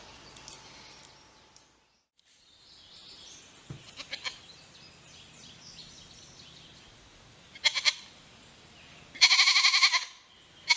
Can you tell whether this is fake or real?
real